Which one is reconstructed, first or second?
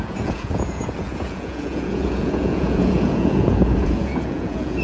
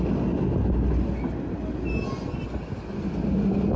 first